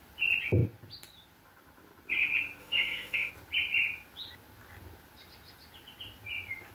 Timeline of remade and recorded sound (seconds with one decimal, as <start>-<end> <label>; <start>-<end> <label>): 0.0-2.6 recorded; 2.6-3.3 remade; 3.3-6.7 recorded